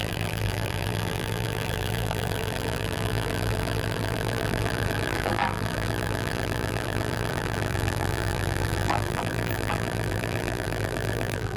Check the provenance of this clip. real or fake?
fake